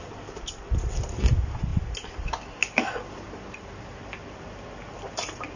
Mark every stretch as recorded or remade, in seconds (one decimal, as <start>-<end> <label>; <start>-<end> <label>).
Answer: 0.0-5.6 recorded